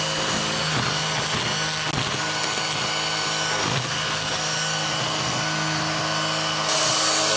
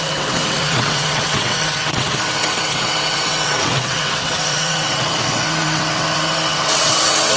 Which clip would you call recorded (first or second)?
first